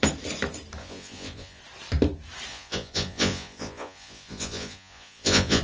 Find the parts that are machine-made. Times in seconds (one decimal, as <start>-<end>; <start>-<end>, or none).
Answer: 0.8-1.6; 2.5-5.6